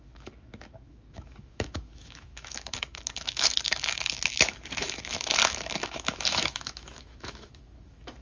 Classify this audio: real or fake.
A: fake